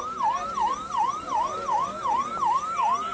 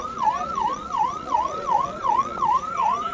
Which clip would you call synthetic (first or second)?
second